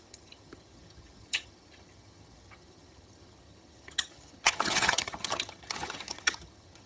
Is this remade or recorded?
remade